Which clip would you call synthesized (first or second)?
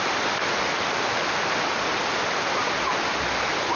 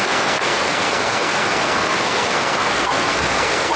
second